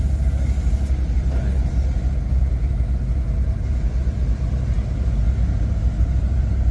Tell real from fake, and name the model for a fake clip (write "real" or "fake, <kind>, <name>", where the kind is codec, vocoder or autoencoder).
real